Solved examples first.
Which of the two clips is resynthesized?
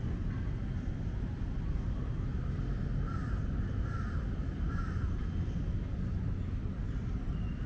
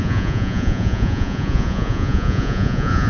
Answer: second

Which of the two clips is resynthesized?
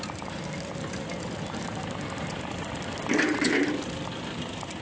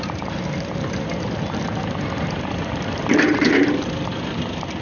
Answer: second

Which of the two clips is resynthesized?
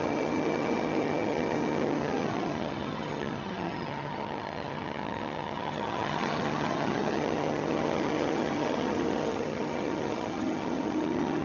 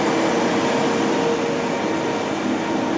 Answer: first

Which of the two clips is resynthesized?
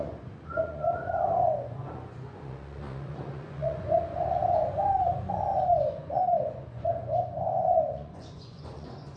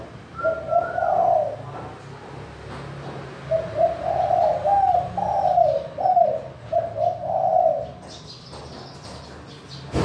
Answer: first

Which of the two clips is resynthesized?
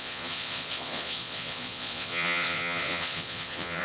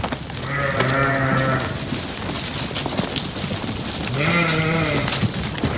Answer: first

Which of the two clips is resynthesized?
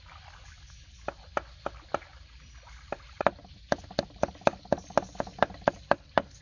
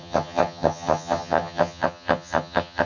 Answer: second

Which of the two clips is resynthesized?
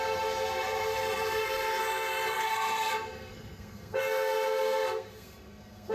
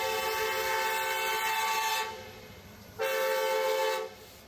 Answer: first